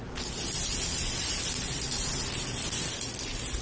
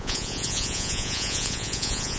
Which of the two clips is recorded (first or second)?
first